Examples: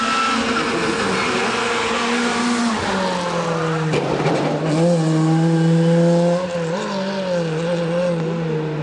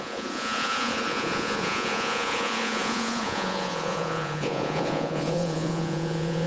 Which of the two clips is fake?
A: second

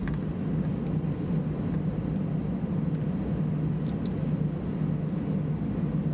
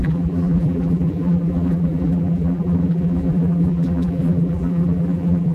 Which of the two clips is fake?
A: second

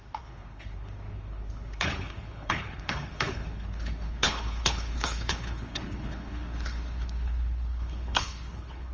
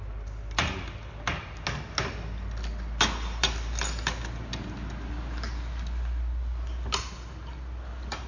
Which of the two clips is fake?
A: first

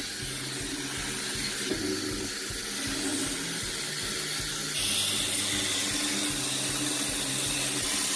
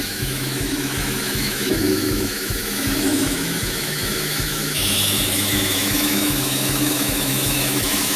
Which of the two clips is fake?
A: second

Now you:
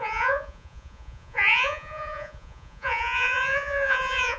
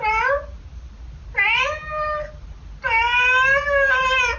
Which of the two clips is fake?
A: first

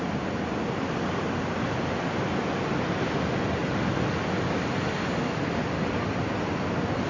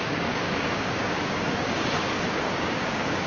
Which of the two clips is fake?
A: second